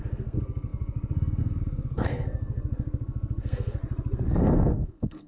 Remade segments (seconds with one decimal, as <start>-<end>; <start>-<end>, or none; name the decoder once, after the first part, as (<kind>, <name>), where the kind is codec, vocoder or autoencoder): 0.0-3.8 (codec, SNAC); 4.4-5.3